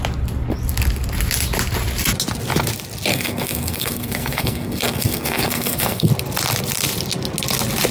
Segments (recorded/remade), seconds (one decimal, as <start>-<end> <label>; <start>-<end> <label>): 0.0-3.1 recorded; 3.1-6.1 remade; 6.1-7.9 recorded